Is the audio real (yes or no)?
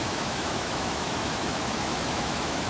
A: no